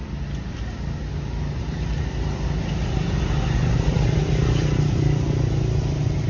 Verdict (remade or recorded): recorded